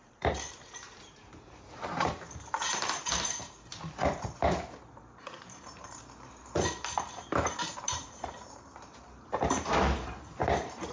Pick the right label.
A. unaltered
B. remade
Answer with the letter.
B